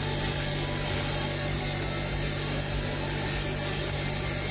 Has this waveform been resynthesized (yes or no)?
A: no